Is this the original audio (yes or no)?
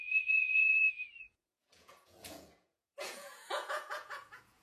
no